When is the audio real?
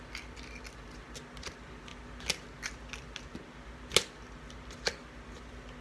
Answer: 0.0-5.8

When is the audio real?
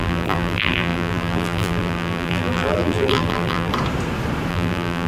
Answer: 3.7-4.5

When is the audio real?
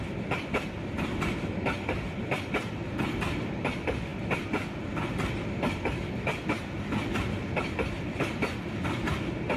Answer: 0.0-2.8; 3.5-9.6